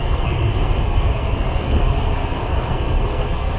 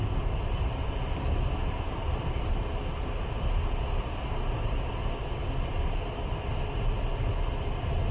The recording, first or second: second